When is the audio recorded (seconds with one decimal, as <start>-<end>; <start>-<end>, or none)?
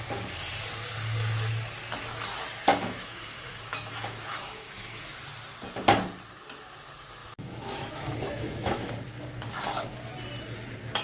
0.0-2.7; 5.0-7.2; 8.9-11.0